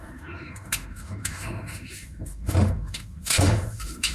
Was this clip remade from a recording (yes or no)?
yes